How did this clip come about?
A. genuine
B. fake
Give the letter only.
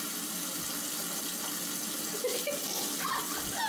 A